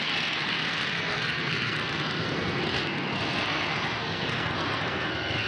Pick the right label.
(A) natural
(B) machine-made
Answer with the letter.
B